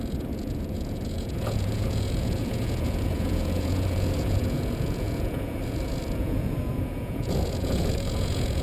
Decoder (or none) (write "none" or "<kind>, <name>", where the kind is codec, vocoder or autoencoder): vocoder, Vocos